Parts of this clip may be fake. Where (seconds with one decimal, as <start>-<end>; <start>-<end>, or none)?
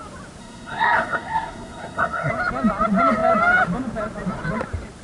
0.4-2.3